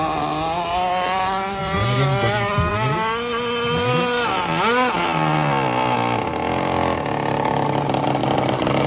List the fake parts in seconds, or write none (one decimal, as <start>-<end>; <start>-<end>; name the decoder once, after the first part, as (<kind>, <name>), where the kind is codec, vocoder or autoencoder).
none